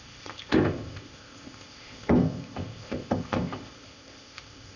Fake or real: fake